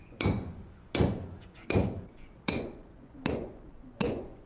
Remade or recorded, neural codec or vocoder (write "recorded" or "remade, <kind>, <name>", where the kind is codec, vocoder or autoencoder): remade, vocoder, Vocos